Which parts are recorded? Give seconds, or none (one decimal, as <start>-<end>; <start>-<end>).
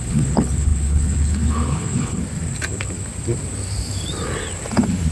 2.2-5.1